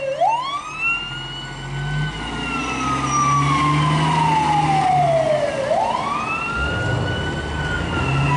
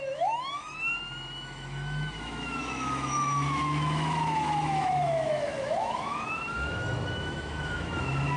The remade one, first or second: second